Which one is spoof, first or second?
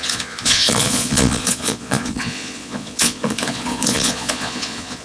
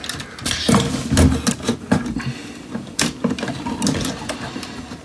first